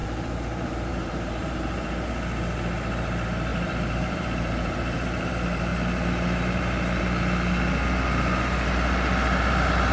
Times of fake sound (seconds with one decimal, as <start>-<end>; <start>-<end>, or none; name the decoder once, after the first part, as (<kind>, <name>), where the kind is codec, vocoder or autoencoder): 0.0-2.1 (vocoder, BigVGAN v2); 3.5-5.3